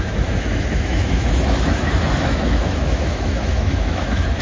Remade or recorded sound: remade